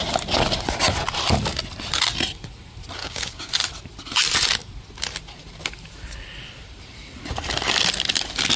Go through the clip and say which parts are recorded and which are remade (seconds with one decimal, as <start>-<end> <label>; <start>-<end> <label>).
0.0-3.0 recorded; 3.0-3.5 remade; 3.5-8.6 recorded